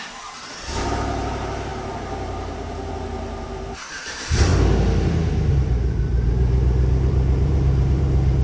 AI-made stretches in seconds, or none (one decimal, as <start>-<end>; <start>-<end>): 0.0-4.5; 5.5-8.4